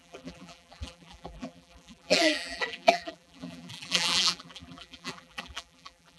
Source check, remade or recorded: remade